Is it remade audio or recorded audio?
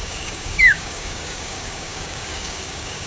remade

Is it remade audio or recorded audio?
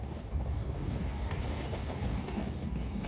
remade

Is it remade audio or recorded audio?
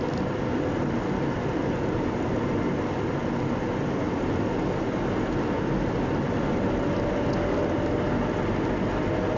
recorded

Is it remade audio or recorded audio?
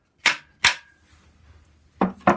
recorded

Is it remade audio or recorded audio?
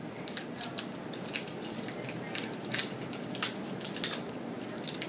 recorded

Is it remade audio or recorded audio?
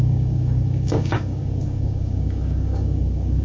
remade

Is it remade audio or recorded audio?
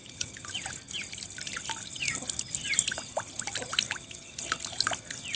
recorded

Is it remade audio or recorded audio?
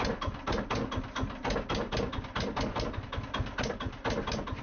recorded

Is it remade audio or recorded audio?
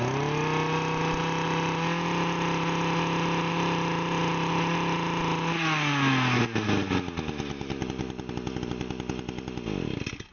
recorded